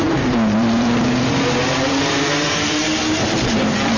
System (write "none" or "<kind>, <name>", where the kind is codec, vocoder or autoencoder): vocoder, BigVGAN v2